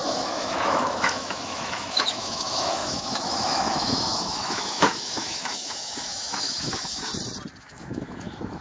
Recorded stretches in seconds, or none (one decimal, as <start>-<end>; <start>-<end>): 7.1-7.6